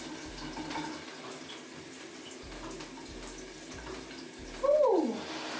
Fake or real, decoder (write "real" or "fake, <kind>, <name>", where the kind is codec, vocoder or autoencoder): real